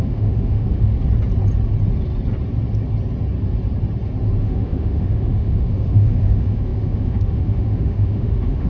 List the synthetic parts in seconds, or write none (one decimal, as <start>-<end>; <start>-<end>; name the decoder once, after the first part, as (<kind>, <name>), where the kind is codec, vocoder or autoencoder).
0.0-0.9 (autoencoder, DAC-VAE); 4.4-8.7